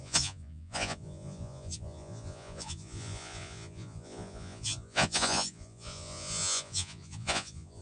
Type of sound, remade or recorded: remade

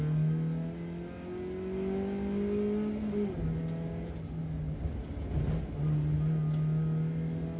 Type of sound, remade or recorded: recorded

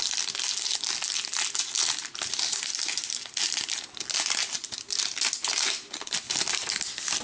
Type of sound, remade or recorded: recorded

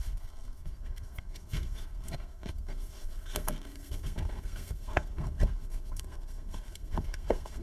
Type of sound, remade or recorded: remade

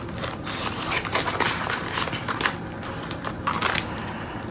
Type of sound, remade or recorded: recorded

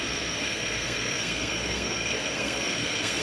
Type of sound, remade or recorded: remade